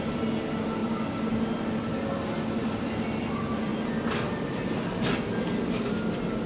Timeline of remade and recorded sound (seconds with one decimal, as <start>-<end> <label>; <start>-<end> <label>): 0.0-6.5 recorded